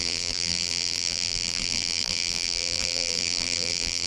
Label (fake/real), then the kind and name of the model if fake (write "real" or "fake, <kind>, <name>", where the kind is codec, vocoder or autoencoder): fake, vocoder, BigVGAN v2